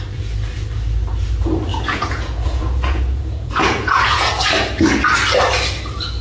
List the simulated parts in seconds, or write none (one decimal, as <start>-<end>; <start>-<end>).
1.7-4.3